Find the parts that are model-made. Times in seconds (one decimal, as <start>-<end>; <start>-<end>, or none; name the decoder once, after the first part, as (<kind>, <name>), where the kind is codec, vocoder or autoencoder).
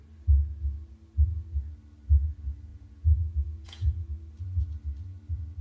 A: 2.7-4.1 (vocoder, Vocos)